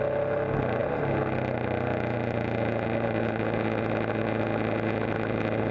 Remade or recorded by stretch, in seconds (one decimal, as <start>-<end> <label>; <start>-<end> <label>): 0.0-5.7 recorded